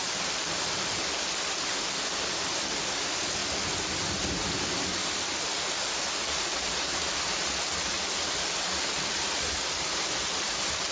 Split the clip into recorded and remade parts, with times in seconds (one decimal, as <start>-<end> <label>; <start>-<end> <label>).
0.0-10.9 recorded